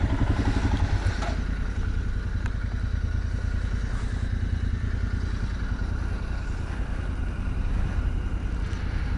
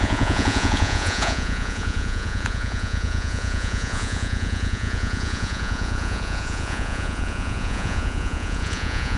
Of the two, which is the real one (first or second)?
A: first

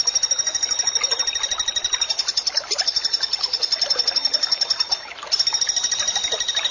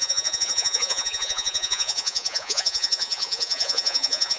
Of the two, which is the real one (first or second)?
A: first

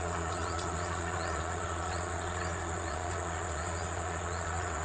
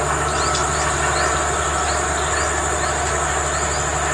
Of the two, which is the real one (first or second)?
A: second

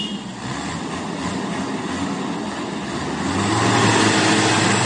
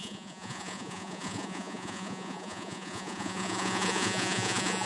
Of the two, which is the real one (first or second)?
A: first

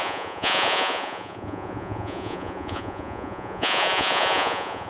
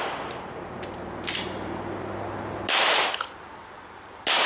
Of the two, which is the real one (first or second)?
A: second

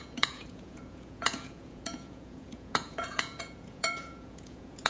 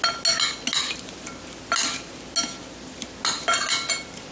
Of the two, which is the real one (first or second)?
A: second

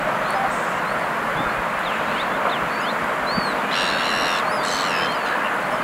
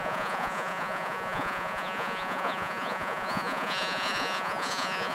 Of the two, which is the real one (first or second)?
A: first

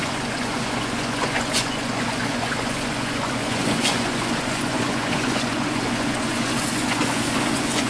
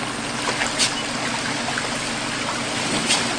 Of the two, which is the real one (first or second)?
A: second